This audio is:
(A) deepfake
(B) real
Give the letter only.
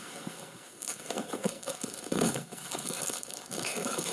A